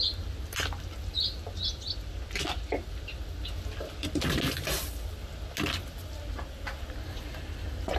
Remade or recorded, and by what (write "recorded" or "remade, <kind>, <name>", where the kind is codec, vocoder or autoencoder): recorded